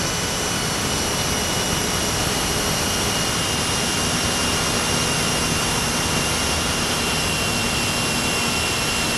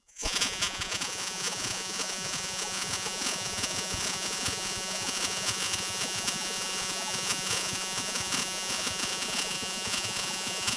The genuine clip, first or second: first